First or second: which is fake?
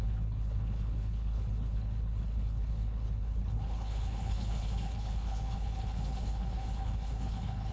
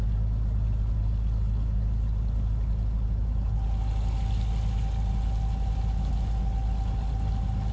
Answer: first